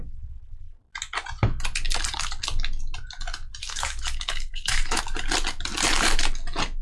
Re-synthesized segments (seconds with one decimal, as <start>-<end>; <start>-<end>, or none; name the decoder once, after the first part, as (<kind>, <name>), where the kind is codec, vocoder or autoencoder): 3.6-5.0 (autoencoder, DAC-VAE)